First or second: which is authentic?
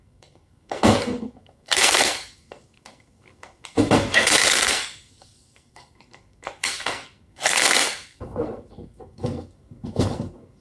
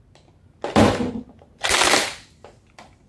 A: second